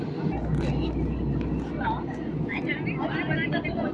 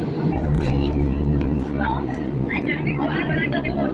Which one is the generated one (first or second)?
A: second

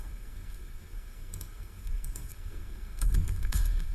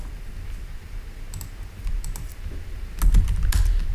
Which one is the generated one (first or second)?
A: first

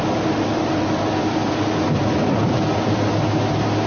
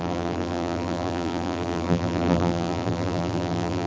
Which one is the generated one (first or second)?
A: second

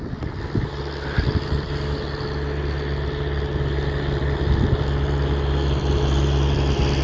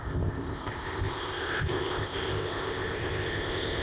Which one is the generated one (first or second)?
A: second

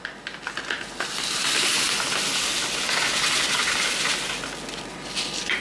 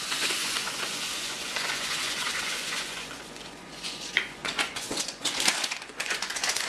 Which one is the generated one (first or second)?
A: second